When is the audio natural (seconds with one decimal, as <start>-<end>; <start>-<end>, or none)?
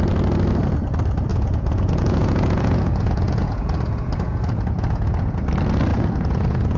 0.0-1.3; 5.4-5.9